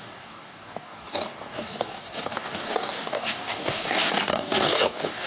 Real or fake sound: fake